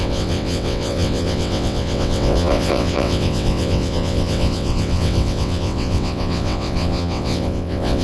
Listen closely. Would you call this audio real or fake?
fake